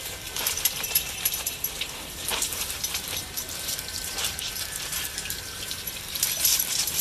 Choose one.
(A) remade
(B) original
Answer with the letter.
A